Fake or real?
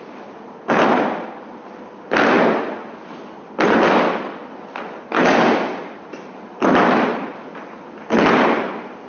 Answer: real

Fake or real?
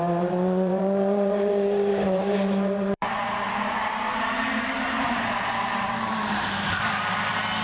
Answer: fake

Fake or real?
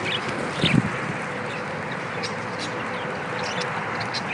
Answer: real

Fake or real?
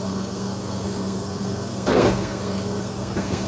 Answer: fake